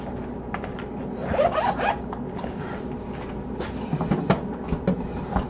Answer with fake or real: real